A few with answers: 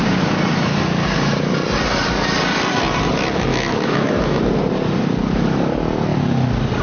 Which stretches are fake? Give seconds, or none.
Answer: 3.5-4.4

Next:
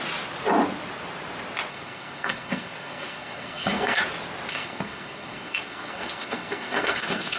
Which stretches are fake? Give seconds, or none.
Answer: 1.7-4.0; 4.5-7.4

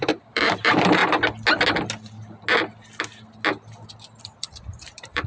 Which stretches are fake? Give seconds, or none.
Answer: 0.0-1.0; 4.2-5.3

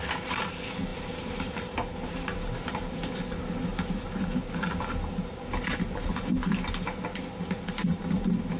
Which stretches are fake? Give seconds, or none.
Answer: 0.9-3.2